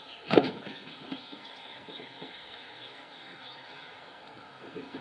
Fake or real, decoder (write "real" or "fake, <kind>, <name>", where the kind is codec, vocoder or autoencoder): fake, codec, SNAC